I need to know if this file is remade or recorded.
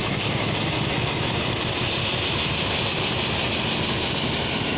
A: recorded